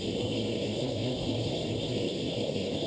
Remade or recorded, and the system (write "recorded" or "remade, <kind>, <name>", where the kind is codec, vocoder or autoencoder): remade, codec, SNAC